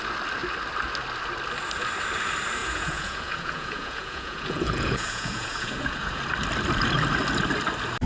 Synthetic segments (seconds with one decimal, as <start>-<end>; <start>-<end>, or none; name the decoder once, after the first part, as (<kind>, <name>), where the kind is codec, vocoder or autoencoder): 2.6-6.2 (vocoder, Vocos)